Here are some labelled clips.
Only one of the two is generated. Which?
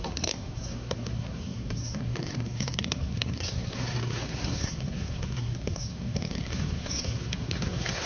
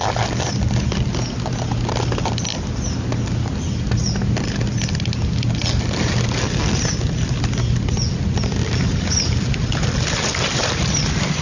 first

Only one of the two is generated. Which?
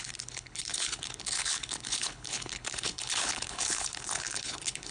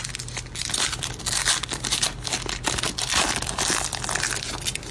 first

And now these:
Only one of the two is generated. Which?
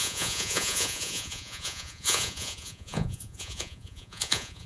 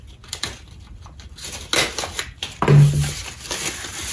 first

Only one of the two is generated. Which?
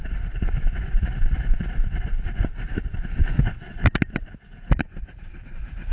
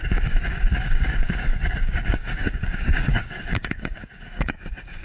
second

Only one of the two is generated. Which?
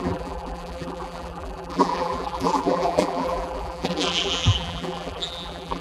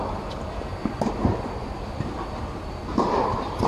first